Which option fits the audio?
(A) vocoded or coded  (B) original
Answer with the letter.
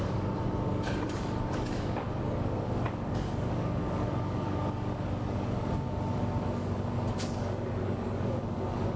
A